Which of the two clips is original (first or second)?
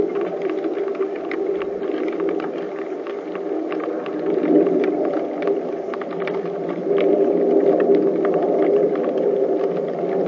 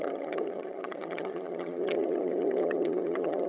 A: first